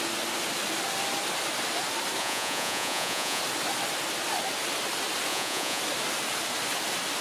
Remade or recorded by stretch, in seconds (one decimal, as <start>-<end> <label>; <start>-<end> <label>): 0.0-2.2 recorded; 2.2-3.4 remade; 3.4-5.3 recorded; 5.3-5.8 remade; 5.8-7.2 recorded